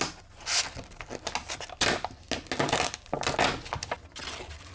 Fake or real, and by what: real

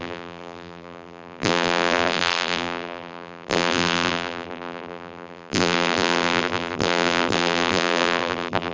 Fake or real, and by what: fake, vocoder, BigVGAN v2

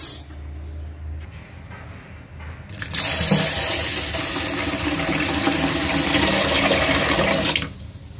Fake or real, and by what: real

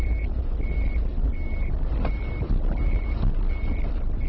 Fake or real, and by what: real